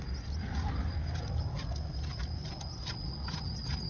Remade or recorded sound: recorded